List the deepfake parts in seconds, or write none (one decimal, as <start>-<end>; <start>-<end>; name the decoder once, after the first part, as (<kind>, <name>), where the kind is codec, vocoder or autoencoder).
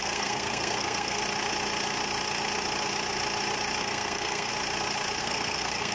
0.0-1.2 (codec, SNAC); 3.8-4.5; 5.2-5.9